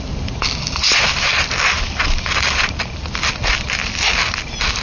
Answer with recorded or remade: recorded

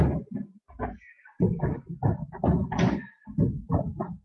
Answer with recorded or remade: recorded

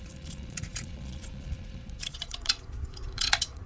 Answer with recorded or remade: remade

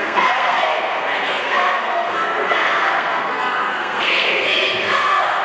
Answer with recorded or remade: remade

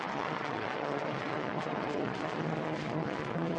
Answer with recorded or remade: remade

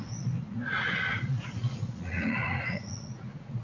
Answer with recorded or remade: remade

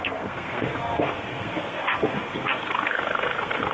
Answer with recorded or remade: remade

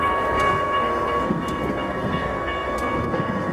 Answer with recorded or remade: remade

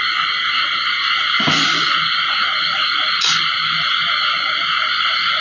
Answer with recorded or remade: recorded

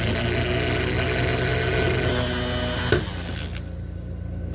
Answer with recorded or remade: recorded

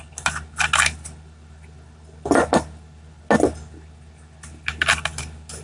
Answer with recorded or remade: recorded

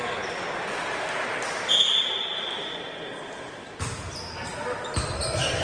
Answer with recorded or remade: recorded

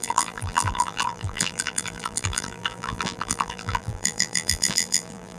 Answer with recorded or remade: remade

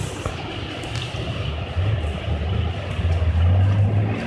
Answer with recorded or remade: recorded